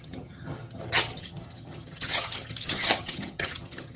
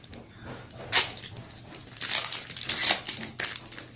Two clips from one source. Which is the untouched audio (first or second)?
second